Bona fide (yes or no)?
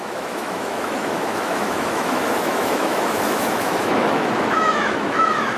no